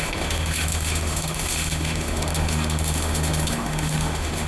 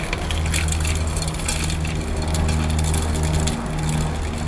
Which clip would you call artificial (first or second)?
first